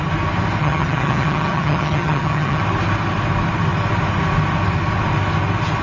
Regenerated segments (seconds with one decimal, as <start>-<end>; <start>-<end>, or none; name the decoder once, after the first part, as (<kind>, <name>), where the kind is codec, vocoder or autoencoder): 0.6-2.6 (vocoder, HiFi-GAN)